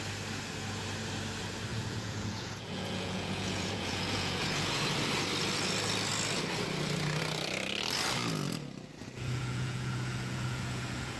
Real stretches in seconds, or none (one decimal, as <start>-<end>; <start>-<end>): 0.0-1.7; 4.8-9.0